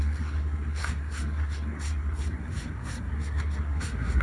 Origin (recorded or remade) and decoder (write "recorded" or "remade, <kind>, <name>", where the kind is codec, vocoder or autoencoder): remade, codec, SNAC